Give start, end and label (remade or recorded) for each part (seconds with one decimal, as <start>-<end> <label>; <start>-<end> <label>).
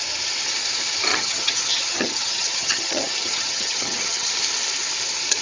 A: 0.0-1.1 recorded; 1.1-4.3 remade; 4.3-5.4 recorded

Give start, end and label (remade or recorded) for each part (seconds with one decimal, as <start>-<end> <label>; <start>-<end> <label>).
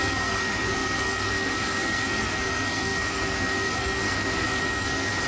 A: 0.0-5.3 remade